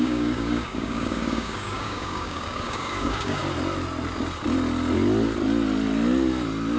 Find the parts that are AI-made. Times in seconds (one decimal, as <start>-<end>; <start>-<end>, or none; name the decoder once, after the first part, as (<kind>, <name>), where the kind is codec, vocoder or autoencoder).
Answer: 0.0-3.4 (codec, DAC)